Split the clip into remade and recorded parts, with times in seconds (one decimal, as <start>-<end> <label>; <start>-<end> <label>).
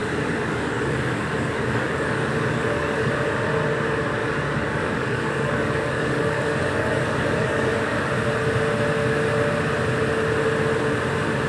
0.0-3.1 remade; 3.1-4.2 recorded; 4.2-8.1 remade; 8.1-11.5 recorded